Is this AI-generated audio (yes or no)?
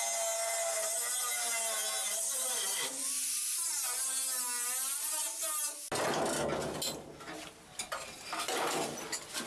no